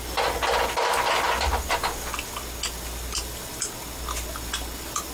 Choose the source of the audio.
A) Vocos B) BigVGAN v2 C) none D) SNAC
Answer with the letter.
C